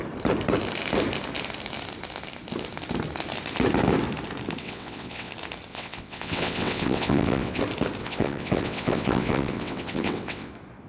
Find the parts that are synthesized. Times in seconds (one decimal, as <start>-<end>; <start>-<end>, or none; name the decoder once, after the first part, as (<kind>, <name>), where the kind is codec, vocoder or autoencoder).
4.6-5.3 (vocoder, WaveNeXt); 5.7-7.6; 8.0-10.5